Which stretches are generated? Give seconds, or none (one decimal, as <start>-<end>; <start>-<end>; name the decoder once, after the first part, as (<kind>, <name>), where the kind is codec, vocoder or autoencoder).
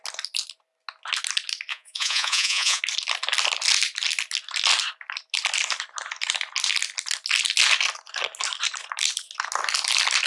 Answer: 1.7-2.8 (vocoder, Vocos)